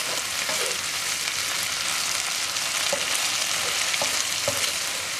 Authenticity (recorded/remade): recorded